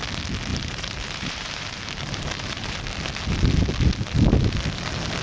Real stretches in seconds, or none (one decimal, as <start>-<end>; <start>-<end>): 0.0-0.5; 2.8-5.2